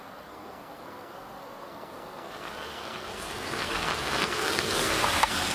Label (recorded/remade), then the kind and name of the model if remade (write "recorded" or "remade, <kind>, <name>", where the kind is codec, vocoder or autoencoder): remade, codec, SNAC